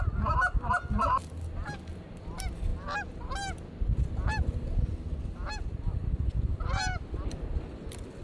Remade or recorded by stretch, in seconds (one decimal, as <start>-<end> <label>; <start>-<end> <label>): 0.0-8.2 recorded